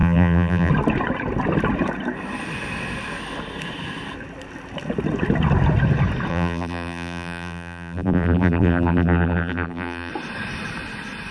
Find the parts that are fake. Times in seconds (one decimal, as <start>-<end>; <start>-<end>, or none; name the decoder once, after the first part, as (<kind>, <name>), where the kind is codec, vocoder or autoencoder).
0.0-0.7 (vocoder, BigVGAN v2); 6.3-10.1

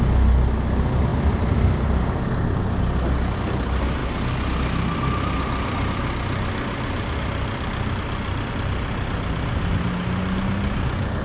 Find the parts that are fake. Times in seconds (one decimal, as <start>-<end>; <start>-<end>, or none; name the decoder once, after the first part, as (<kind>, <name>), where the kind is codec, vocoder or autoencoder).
1.1-2.8 (vocoder, BigVGAN v2)

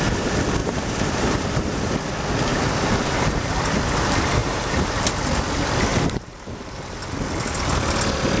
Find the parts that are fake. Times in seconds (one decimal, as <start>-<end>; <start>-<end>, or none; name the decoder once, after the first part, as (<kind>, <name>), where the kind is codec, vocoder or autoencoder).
0.6-1.9 (vocoder, BigVGAN v2); 2.5-3.5; 4.4-5.1; 5.9-7.0

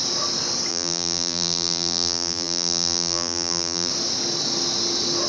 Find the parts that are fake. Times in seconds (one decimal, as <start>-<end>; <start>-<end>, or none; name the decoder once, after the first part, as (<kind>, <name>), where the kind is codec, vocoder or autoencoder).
0.7-3.9 (vocoder, BigVGAN v2)

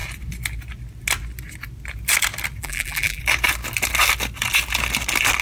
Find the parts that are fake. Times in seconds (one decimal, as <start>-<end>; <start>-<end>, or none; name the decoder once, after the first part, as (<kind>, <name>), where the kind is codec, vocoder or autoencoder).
2.6-3.2 (vocoder, BigVGAN v2)

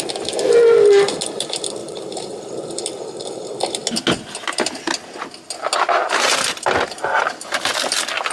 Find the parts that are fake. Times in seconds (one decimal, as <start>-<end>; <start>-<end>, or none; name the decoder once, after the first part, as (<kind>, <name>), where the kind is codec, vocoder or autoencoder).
1.8-2.4 (vocoder, BigVGAN v2)

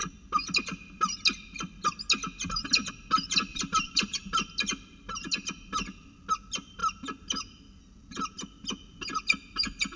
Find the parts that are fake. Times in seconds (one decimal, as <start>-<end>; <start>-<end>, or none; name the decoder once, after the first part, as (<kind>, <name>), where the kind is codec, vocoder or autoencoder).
3.5-4.3 (vocoder, BigVGAN v2)